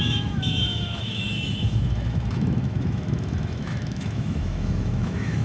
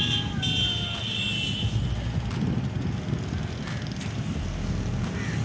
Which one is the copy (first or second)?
first